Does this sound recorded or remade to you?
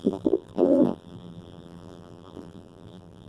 remade